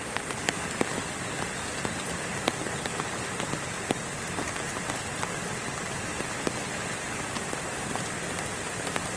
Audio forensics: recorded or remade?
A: recorded